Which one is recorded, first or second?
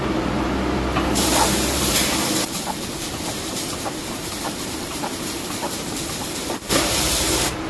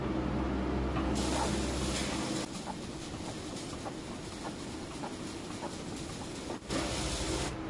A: second